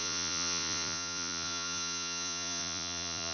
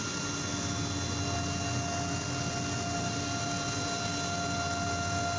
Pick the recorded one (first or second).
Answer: second